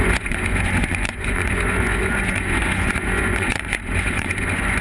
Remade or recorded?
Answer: remade